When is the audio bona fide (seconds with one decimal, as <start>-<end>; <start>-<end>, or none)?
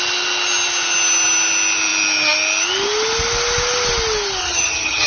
0.0-4.4